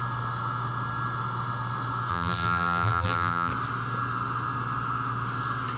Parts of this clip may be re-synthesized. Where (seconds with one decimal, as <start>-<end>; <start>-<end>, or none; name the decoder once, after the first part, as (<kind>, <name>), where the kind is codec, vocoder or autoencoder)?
2.1-3.5 (vocoder, BigVGAN v2)